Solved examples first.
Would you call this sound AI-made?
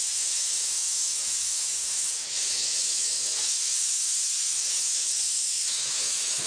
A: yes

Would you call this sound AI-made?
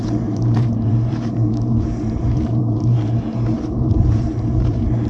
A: yes